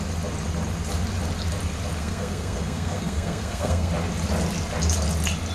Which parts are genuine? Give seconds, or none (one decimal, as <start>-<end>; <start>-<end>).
0.0-2.0; 3.9-5.5